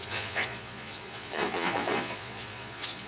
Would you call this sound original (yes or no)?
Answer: no